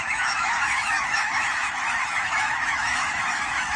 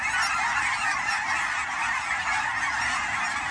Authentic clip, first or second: second